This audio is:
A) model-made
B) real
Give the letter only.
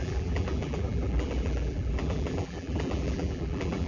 A